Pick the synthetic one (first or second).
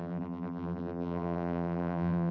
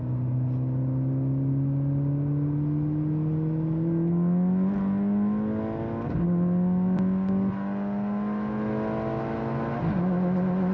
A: first